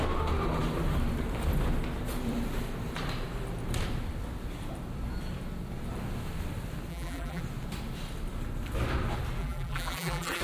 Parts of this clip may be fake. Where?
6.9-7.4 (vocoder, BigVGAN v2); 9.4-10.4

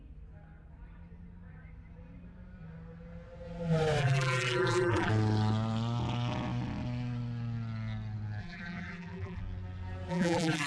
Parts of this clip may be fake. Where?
4.0-5.1 (vocoder, BigVGAN v2); 8.4-9.4; 10.1-10.7

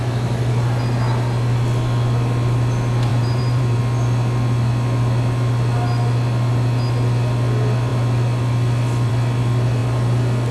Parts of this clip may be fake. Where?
3.1-3.8 (vocoder, BigVGAN v2)